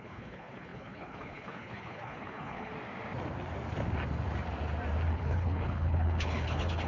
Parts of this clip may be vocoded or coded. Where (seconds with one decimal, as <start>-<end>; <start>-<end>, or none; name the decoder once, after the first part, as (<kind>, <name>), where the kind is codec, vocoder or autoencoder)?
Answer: 0.0-2.7 (codec, HILCodec); 5.1-6.9